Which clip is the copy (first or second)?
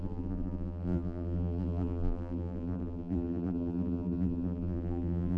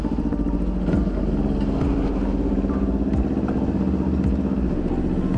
first